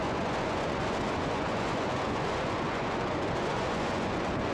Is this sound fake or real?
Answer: fake